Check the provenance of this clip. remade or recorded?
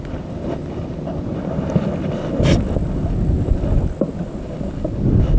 recorded